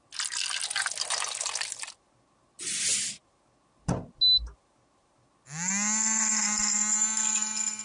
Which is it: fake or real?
real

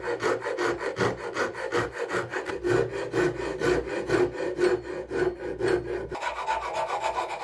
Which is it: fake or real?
real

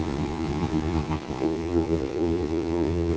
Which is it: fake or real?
fake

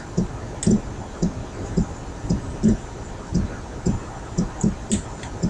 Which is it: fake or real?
real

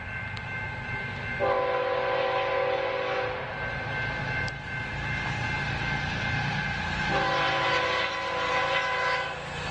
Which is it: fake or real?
real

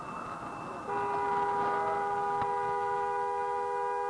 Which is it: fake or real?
real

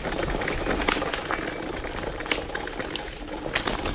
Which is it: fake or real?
real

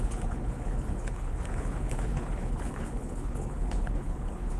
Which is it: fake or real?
fake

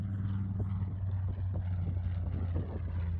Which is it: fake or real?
real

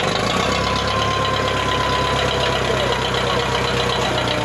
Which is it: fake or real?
real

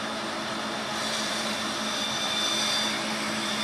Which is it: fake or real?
real